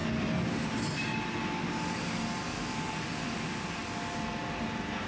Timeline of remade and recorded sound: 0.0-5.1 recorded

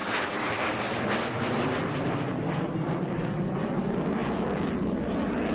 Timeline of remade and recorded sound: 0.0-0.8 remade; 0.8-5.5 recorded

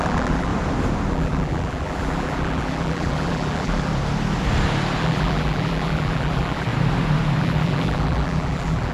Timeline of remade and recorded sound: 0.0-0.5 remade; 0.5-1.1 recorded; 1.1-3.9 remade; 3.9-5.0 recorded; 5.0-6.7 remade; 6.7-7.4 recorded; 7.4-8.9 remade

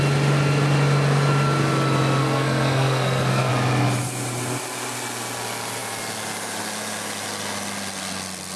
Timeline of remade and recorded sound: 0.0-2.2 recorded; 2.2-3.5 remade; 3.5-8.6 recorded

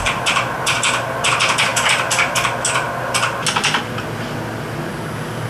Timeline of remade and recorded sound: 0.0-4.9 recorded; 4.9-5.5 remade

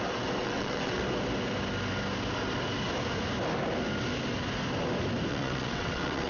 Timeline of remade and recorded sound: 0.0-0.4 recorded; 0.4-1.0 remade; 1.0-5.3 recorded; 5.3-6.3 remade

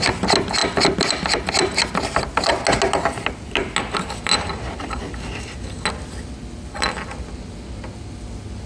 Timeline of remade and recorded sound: 0.0-8.7 recorded

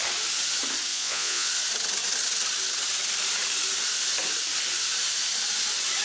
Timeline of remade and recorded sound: 0.0-0.9 recorded; 0.9-1.5 remade; 1.5-6.0 recorded